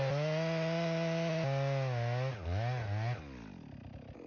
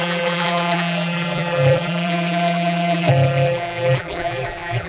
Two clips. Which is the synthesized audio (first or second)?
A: second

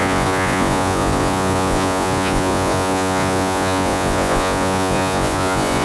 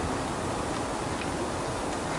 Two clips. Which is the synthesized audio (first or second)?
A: first